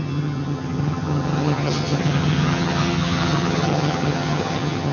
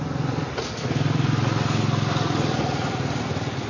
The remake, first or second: first